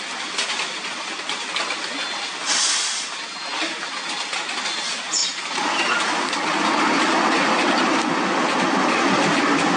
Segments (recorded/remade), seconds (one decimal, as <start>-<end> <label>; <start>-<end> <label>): 0.0-9.8 recorded